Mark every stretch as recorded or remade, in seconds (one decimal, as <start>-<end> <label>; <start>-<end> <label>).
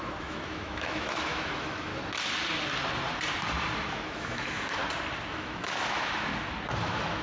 0.0-1.9 remade; 1.9-3.9 recorded; 3.9-4.8 remade; 4.8-5.3 recorded; 5.3-6.3 remade; 6.3-6.8 recorded; 6.8-7.2 remade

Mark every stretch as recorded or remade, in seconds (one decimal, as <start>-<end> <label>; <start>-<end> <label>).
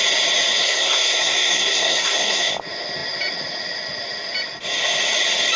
0.0-0.6 recorded; 0.6-2.5 remade; 2.5-5.6 recorded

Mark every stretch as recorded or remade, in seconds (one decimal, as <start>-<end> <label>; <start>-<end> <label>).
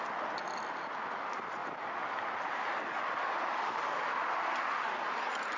0.0-5.6 recorded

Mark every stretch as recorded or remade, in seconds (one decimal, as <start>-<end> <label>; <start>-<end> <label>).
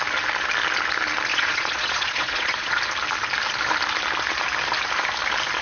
0.0-1.3 recorded; 1.3-2.8 remade; 2.8-5.6 recorded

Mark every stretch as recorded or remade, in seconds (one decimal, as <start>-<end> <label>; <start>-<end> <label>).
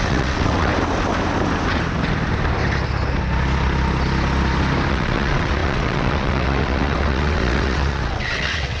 0.0-0.7 remade; 0.7-4.9 recorded; 4.9-8.8 remade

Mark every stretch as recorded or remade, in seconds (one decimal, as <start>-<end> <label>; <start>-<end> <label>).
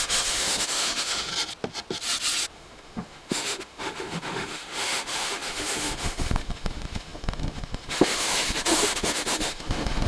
0.0-1.3 remade; 1.3-2.5 recorded; 2.5-10.1 remade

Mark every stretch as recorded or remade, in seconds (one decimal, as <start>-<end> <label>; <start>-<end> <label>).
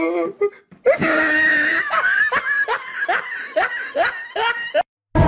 0.0-1.5 recorded; 1.5-4.7 remade; 4.7-5.3 recorded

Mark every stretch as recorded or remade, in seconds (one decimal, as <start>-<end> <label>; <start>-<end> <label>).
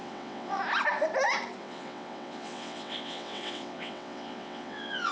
0.0-0.6 remade; 0.6-1.6 recorded; 1.6-5.1 remade